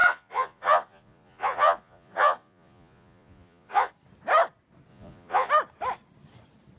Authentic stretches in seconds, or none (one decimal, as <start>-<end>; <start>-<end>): 3.9-4.9; 5.5-6.8